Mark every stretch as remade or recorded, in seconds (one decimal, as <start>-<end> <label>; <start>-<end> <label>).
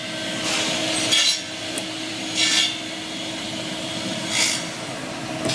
0.0-5.5 recorded